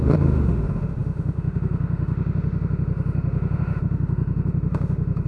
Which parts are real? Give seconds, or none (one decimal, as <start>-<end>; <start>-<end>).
none

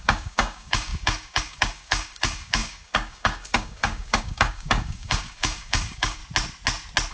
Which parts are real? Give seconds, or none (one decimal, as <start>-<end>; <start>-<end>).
6.2-7.1

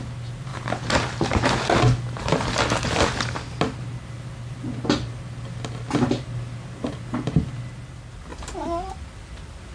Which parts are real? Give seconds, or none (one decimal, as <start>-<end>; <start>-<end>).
0.0-9.7

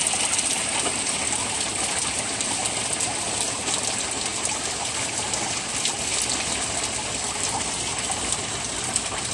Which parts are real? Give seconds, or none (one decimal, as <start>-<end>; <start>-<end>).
0.0-9.3